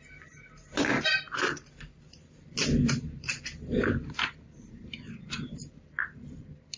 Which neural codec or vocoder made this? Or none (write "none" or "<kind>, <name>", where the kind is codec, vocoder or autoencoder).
vocoder, BigVGAN v2